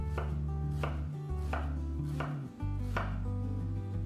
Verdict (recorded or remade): recorded